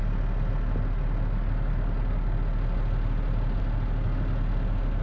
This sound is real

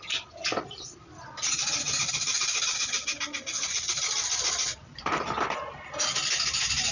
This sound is real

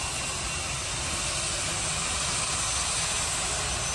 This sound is real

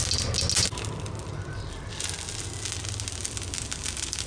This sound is real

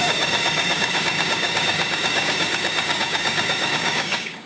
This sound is fake